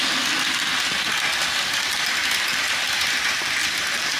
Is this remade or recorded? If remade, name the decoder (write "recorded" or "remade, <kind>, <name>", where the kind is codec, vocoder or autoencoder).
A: recorded